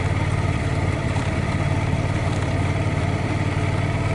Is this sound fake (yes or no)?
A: yes